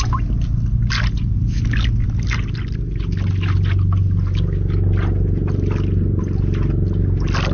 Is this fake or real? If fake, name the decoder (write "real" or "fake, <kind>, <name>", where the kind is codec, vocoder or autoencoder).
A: real